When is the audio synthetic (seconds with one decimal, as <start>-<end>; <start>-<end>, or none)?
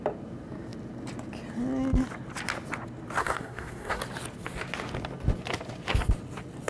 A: 3.2-4.0